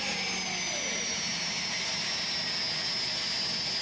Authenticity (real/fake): real